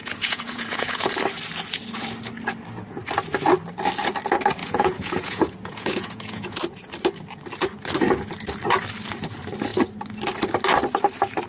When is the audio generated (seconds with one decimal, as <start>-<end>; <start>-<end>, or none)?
0.0-1.2; 4.6-6.6